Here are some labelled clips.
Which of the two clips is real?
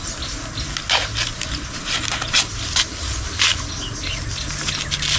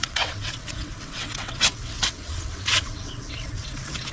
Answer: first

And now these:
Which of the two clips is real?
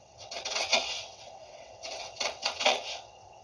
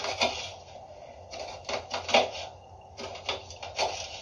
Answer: second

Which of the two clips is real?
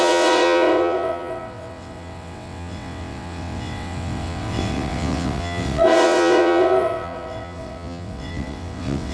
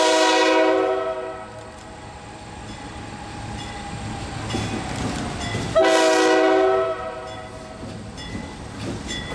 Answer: second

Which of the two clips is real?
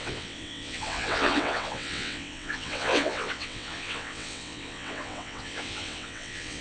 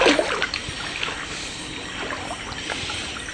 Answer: second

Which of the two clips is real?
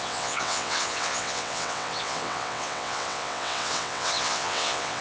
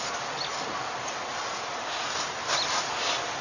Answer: second